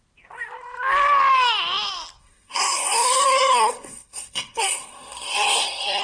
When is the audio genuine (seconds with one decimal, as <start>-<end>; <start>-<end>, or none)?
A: 0.0-2.2